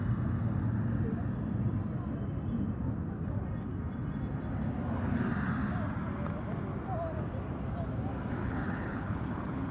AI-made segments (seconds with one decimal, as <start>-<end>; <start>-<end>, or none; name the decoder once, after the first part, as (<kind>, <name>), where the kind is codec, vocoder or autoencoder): 8.4-9.7 (codec, HILCodec)